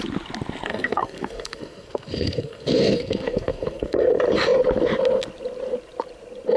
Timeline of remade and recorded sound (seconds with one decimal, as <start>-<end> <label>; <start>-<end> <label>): 0.0-0.7 recorded; 0.7-4.1 remade; 4.1-6.6 recorded